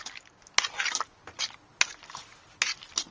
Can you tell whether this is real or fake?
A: real